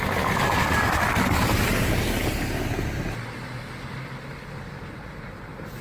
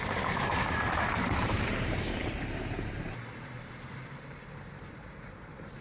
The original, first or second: first